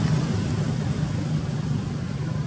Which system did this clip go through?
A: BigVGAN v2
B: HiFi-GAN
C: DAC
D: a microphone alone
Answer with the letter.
D